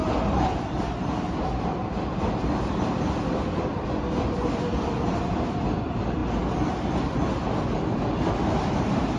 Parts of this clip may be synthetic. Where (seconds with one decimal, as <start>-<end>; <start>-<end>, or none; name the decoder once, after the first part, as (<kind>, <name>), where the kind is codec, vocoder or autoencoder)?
none